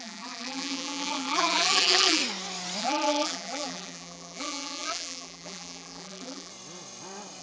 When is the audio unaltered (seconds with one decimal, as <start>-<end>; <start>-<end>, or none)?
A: 2.2-2.8; 6.5-7.4